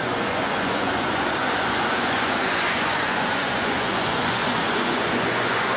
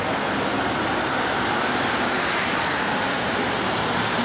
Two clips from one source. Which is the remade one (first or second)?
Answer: first